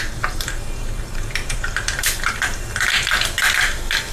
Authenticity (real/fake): fake